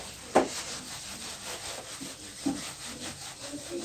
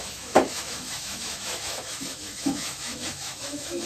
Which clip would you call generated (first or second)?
second